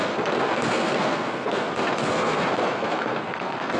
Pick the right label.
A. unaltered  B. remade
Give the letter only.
B